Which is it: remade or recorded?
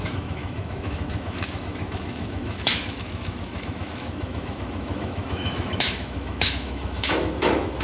remade